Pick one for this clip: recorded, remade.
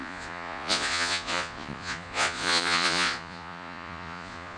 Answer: remade